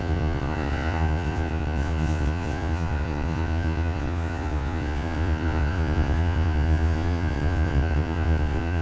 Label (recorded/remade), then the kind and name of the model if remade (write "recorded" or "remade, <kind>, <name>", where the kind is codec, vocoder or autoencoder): remade, vocoder, Vocos